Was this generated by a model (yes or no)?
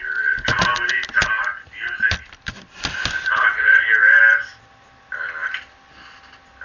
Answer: no